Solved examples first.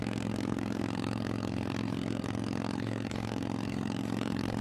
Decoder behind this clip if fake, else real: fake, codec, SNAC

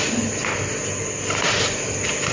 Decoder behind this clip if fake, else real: real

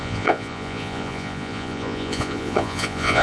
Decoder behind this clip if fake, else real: fake, vocoder, Vocos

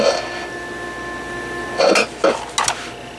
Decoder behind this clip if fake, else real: real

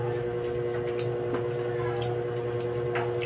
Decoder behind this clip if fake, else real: real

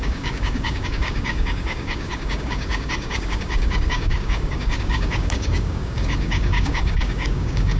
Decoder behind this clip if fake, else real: fake, codec, DAC